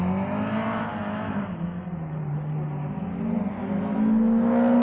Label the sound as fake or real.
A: real